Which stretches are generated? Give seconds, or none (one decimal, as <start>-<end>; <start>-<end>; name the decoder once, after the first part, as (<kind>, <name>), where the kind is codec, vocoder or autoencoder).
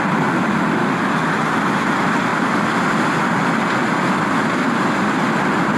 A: 0.0-5.8 (vocoder, BigVGAN v2)